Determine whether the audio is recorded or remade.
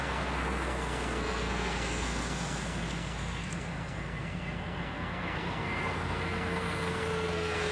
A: remade